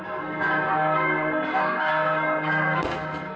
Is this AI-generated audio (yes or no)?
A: yes